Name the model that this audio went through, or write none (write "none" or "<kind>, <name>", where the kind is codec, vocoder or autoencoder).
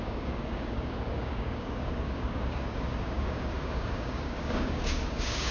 codec, DAC